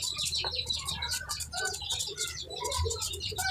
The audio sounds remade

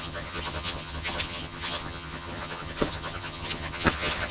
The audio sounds remade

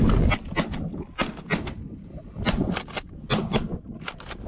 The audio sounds recorded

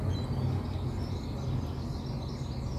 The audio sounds recorded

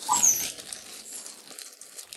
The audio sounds recorded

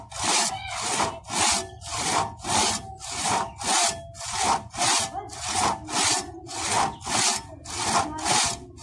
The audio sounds recorded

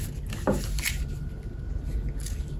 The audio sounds recorded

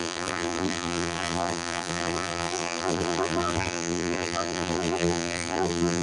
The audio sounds remade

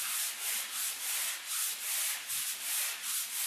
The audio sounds recorded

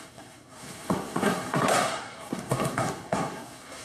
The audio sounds remade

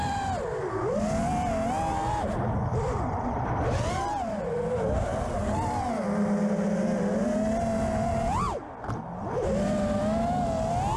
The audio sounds recorded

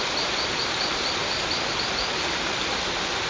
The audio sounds recorded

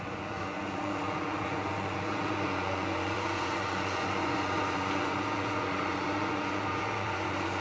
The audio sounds remade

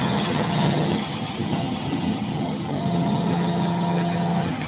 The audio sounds remade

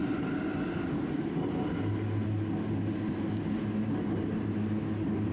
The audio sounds recorded